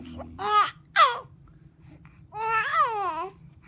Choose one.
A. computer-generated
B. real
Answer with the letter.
B